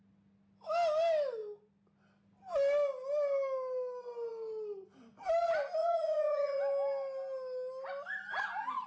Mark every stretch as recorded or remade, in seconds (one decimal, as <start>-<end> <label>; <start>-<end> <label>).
0.0-5.8 recorded; 5.8-6.6 remade; 6.6-8.9 recorded